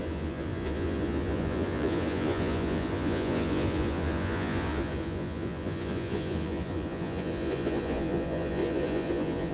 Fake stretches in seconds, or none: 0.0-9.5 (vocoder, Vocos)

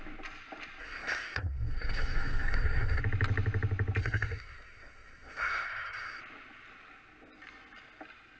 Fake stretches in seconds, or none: 0.8-3.0 (codec, SNAC); 4.0-6.2

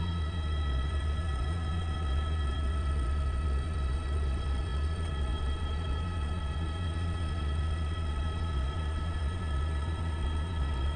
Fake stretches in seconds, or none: 0.0-11.0 (vocoder, Vocos)

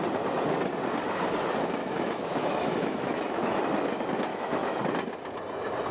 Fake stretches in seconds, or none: 1.8-3.6 (autoencoder, DAC-VAE); 4.3-4.8

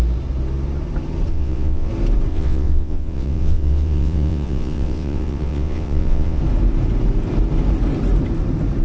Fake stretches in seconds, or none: 1.3-1.9 (vocoder, WaveNeXt); 2.3-6.4

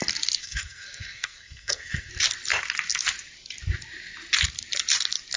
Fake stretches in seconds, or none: 0.4-2.1 (codec, SNAC)